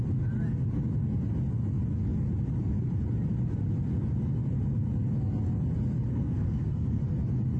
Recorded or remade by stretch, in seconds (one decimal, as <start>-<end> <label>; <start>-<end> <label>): 0.0-6.1 recorded; 6.1-7.0 remade; 7.0-7.6 recorded